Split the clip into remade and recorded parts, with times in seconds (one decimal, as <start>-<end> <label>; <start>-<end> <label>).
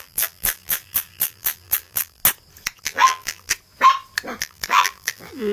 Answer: 0.0-2.2 remade; 2.2-2.8 recorded; 2.8-3.5 remade; 3.5-4.4 recorded; 4.4-5.5 remade